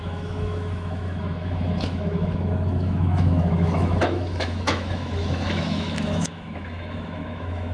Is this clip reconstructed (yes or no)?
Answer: yes